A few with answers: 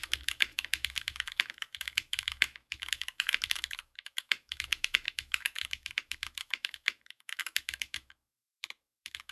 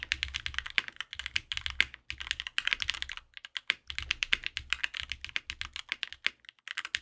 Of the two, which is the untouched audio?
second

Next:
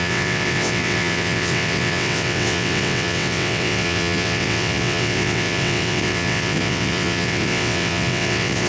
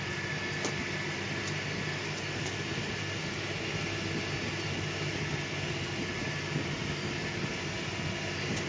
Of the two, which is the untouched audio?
second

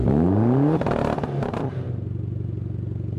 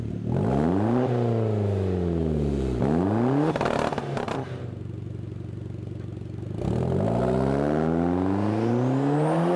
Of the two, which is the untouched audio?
second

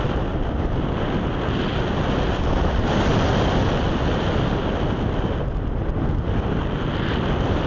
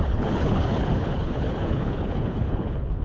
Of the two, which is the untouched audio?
first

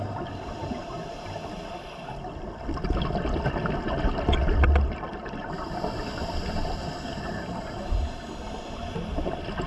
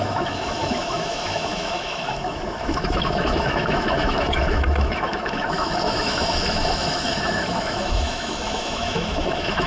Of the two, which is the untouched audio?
first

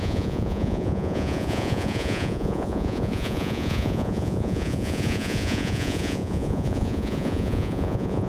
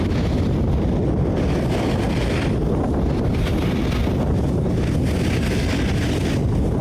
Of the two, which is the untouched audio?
second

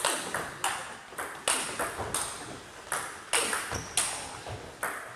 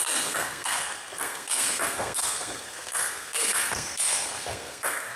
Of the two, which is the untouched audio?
first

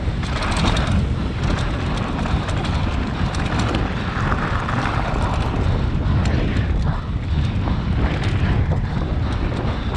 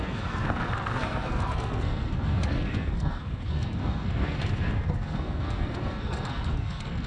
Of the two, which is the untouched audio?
first